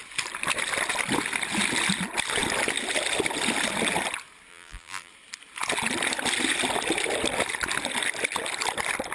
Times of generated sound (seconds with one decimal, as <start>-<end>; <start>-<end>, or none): 4.5-5.1